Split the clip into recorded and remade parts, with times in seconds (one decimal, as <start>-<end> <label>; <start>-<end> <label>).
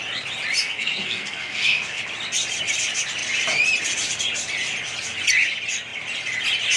0.0-0.6 recorded; 0.6-2.0 remade; 2.0-6.8 recorded